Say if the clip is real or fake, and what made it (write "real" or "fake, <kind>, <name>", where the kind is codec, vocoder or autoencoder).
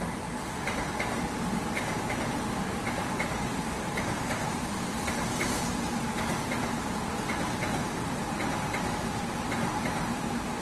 fake, vocoder, BigVGAN v2